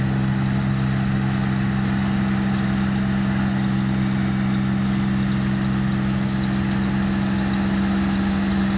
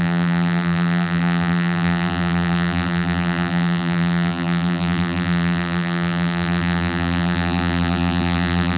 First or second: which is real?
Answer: first